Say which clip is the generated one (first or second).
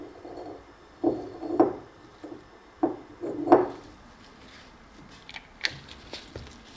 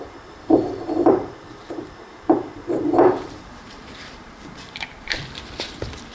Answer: second